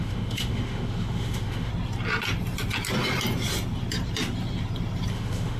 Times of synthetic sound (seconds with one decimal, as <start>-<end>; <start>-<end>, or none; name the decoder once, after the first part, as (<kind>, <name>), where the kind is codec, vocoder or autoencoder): 0.0-1.7 (autoencoder, DAC-VAE); 5.1-5.6